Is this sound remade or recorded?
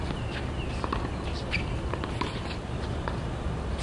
recorded